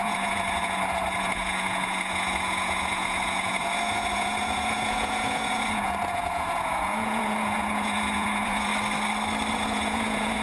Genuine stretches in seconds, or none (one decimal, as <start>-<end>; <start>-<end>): 8.7-9.5